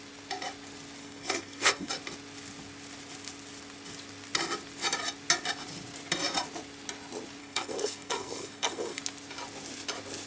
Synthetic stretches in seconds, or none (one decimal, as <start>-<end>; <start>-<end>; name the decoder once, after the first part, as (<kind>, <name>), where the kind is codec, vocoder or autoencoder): 1.0-1.9 (codec, SNAC); 7.4-9.0